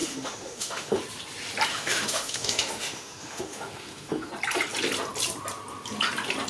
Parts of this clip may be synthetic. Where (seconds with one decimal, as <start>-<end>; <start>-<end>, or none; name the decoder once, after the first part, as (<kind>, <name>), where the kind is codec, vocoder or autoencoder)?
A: 0.0-1.0 (autoencoder, DAC-VAE); 1.7-4.3